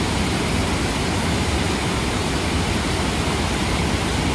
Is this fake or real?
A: real